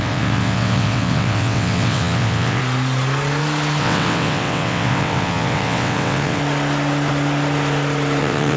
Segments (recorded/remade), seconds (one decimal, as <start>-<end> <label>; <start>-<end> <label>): 0.0-2.6 remade; 2.6-3.8 recorded; 3.8-6.4 remade; 6.4-8.2 recorded; 8.2-8.6 remade